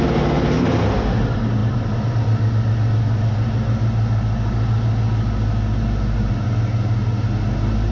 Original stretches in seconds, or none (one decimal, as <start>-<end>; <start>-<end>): 0.0-7.9